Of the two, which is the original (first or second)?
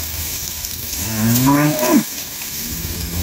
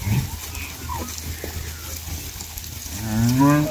second